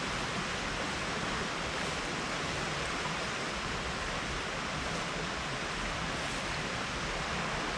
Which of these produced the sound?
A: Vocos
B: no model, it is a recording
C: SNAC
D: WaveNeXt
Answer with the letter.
B